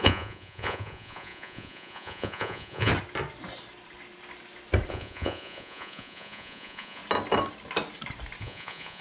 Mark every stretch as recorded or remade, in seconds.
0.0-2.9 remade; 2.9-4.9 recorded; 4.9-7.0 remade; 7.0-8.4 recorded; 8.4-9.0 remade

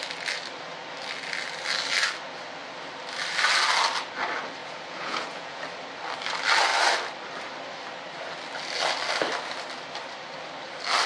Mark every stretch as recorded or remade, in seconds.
0.0-4.6 recorded; 4.6-5.6 remade; 5.6-11.1 recorded